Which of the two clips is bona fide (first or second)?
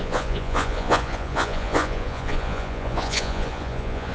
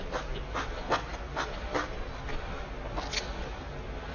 second